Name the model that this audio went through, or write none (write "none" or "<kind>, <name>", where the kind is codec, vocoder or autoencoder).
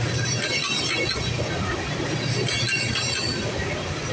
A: none